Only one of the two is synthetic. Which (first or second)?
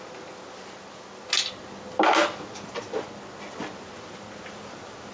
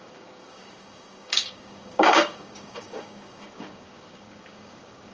second